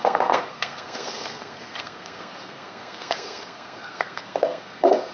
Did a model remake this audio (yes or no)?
yes